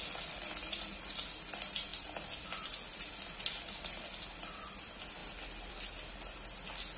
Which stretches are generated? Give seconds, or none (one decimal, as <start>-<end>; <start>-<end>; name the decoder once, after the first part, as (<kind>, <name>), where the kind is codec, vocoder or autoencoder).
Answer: none